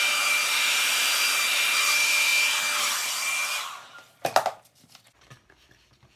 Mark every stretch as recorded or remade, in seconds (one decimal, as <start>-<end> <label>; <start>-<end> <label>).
0.0-2.3 remade; 2.3-2.8 recorded; 2.8-3.4 remade; 3.4-5.2 recorded; 5.2-6.2 remade